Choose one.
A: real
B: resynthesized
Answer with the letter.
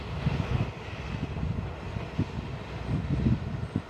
A